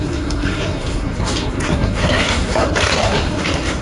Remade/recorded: remade